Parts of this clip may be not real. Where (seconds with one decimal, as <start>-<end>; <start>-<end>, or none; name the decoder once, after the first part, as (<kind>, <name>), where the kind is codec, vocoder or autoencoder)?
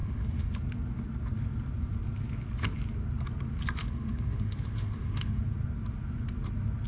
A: 0.0-0.5 (autoencoder, DAC-VAE); 3.8-5.4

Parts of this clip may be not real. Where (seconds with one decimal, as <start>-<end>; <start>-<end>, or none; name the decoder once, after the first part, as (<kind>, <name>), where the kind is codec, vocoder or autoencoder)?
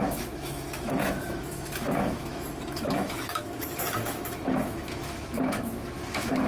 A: 0.0-6.5 (autoencoder, DAC-VAE)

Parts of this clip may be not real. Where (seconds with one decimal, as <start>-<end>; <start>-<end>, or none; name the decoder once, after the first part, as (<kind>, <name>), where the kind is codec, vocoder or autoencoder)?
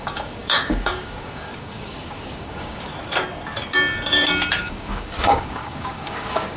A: 0.0-2.9 (codec, DAC); 4.5-6.6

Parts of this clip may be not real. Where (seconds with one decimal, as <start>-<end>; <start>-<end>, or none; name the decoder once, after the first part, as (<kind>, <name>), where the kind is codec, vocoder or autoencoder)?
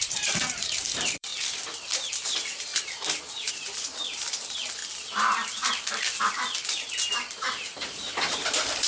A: 0.0-1.3 (vocoder, BigVGAN v2); 2.1-2.7; 3.5-4.8; 7.1-8.9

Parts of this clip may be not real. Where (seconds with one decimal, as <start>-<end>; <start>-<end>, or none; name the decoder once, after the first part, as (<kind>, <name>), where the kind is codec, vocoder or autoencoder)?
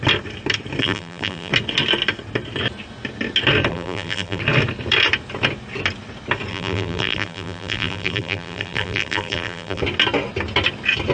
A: 0.8-1.5 (vocoder, BigVGAN v2); 3.7-4.4; 6.5-9.8